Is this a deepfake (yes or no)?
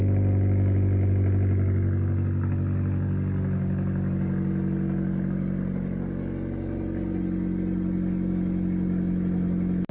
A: no